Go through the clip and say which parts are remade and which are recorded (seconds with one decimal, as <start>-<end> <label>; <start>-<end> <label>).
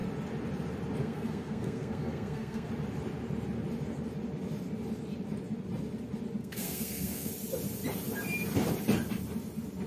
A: 0.0-1.0 recorded; 1.0-2.7 remade; 2.7-6.4 recorded; 6.4-7.3 remade; 7.3-9.9 recorded